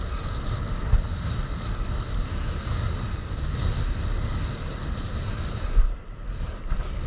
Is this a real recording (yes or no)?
yes